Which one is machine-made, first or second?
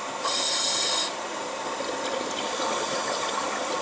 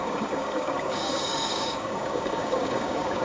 second